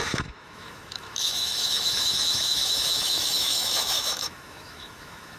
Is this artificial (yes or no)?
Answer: yes